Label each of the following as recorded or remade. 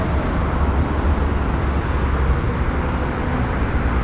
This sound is recorded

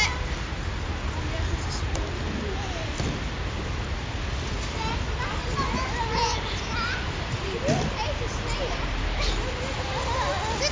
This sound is recorded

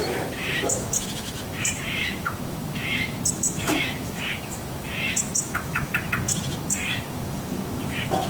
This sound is remade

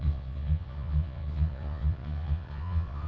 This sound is remade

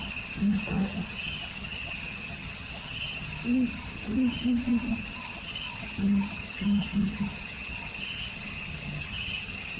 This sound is remade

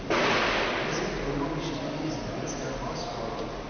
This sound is recorded